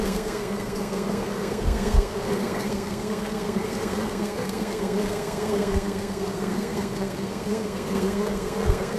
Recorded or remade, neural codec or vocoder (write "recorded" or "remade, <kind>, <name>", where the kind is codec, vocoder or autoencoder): remade, codec, SNAC